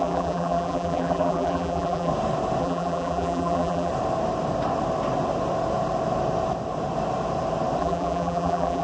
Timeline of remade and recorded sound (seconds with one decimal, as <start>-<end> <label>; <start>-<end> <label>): 0.0-2.1 remade; 2.1-2.6 recorded; 2.6-3.9 remade; 3.9-7.8 recorded; 7.8-8.8 remade